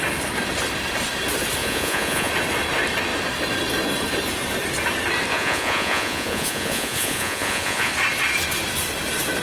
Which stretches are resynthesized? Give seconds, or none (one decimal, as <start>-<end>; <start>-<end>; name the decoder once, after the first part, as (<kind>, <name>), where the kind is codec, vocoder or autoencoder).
1.6-2.3 (vocoder, Vocos); 5.3-7.9